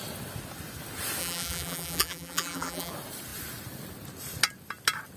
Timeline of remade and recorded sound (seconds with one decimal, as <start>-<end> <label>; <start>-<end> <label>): 0.0-1.2 recorded; 1.2-2.9 remade; 2.9-5.2 recorded